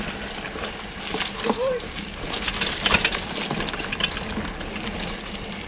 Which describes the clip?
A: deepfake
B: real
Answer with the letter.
B